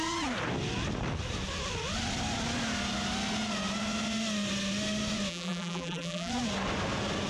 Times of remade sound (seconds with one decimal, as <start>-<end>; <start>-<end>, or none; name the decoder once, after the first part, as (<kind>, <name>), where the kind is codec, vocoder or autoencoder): 5.3-6.3 (vocoder, BigVGAN v2)